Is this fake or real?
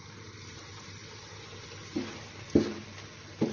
real